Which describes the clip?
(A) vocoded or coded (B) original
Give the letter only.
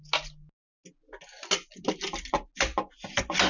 B